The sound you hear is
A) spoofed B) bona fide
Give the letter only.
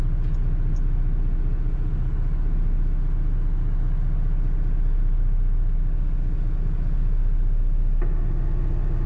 B